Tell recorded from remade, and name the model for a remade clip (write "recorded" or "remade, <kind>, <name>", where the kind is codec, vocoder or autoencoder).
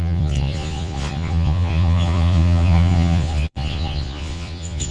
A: remade, vocoder, Vocos